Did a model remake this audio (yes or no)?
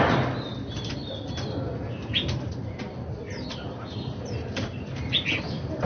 no